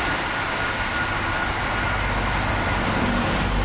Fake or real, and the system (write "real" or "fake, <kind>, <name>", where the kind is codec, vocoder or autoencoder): real